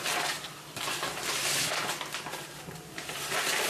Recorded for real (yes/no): no